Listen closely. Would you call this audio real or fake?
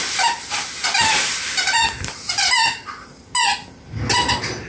real